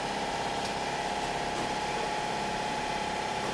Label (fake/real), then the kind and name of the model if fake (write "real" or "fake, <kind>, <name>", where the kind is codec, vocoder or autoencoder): fake, vocoder, BigVGAN v2